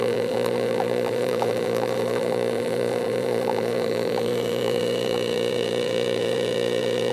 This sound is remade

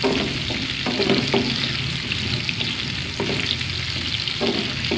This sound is recorded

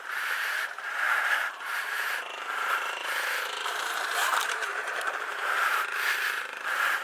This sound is remade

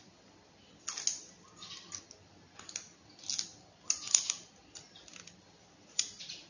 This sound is recorded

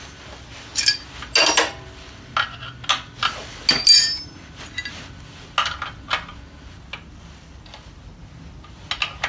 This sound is recorded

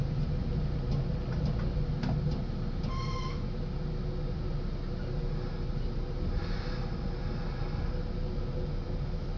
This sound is recorded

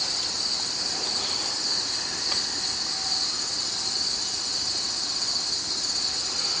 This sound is recorded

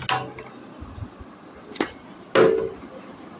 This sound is recorded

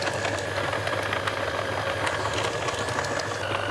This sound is recorded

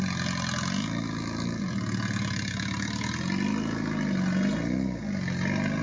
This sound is recorded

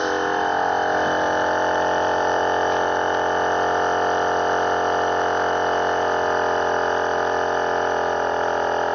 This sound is remade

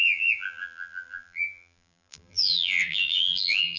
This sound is remade